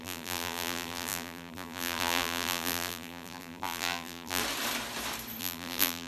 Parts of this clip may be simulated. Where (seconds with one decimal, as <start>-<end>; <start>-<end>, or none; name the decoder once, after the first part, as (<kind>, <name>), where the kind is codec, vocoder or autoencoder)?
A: 0.0-4.4 (vocoder, BigVGAN v2); 5.4-6.1